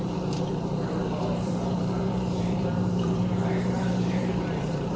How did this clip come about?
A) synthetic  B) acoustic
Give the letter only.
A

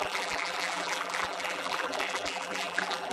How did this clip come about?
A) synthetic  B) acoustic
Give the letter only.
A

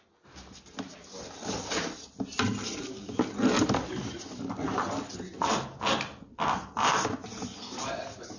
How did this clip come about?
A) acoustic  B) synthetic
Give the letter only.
A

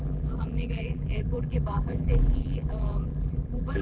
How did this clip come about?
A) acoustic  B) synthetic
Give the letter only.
B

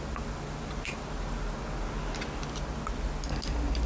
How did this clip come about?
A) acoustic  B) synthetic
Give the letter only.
A